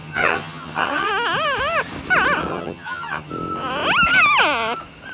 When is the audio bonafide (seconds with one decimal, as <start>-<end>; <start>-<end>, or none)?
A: 1.1-2.5; 3.3-5.1